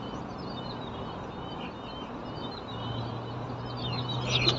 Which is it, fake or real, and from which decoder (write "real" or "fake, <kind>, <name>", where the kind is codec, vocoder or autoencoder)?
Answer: real